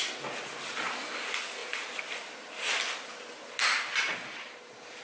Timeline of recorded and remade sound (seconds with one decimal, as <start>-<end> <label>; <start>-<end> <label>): 0.0-5.0 recorded